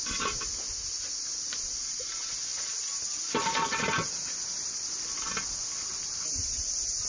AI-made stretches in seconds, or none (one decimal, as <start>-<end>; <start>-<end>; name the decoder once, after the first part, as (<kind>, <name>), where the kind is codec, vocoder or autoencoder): none